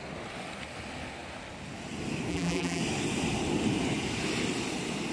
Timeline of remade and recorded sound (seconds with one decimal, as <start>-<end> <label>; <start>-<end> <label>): 0.0-2.3 recorded; 2.3-2.8 remade; 2.8-5.1 recorded